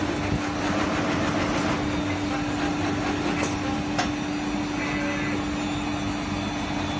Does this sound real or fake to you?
real